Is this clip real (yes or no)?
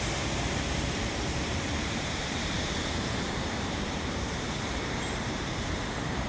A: no